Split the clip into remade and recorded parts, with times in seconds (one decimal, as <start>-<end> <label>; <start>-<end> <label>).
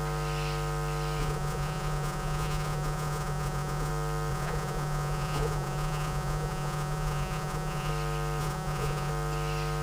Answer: 0.0-1.2 recorded; 1.2-3.9 remade; 3.9-4.3 recorded; 4.3-7.9 remade; 7.9-8.4 recorded; 8.4-9.1 remade; 9.1-9.8 recorded